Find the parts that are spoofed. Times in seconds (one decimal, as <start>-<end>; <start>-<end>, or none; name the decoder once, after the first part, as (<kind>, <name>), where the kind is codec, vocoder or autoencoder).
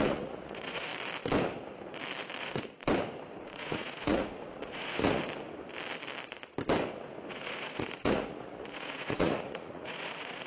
0.0-0.9 (vocoder, Vocos); 2.4-2.8; 3.4-5.2; 7.3-10.5